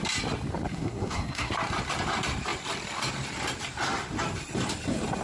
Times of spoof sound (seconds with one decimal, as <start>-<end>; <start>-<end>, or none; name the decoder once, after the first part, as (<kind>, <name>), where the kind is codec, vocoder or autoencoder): 0.7-1.5 (codec, SNAC)